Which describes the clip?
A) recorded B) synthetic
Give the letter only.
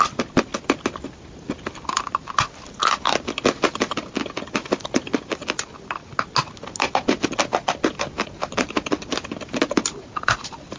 A